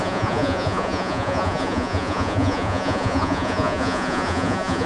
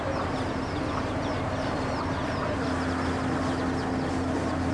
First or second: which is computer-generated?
first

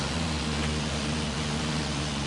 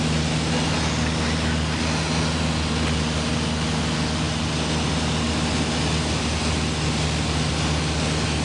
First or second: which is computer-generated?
first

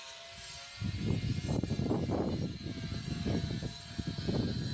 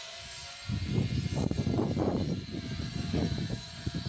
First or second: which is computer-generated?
second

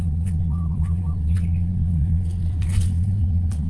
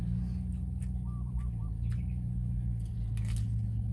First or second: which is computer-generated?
first